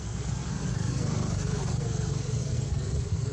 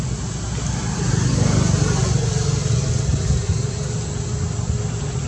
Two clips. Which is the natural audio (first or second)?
second